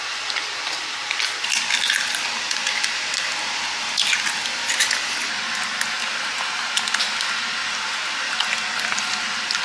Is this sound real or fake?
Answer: real